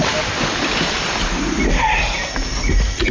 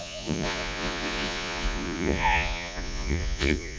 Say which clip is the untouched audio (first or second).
first